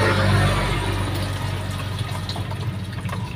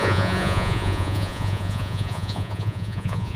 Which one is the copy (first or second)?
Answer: second